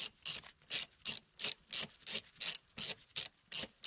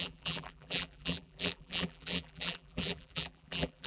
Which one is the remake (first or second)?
second